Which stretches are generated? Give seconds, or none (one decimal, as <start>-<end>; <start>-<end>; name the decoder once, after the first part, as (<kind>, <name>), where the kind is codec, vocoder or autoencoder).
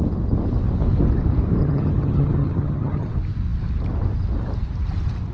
1.6-3.1 (vocoder, HiFi-GAN)